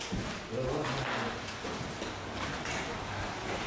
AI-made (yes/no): no